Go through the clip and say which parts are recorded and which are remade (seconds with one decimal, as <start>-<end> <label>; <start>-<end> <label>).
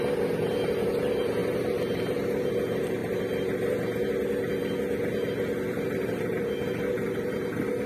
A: 0.0-7.9 recorded